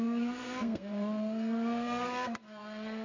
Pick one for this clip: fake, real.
fake